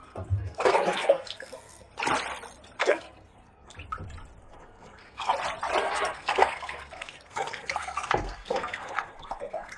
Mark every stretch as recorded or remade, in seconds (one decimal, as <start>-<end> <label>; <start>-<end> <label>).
0.0-1.9 remade; 1.9-2.8 recorded; 2.8-3.7 remade; 3.7-4.4 recorded; 4.4-5.3 remade; 5.3-5.8 recorded; 5.8-9.8 remade